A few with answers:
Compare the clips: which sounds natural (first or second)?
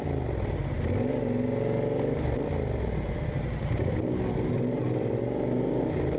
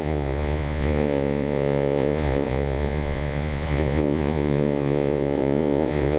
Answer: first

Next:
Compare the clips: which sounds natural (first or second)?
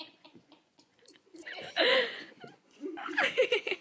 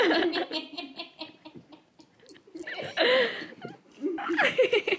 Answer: second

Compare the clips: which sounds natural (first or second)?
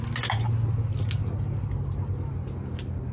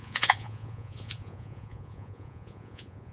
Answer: first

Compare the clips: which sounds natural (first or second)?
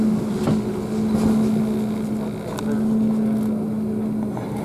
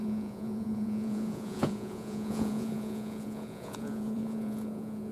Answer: first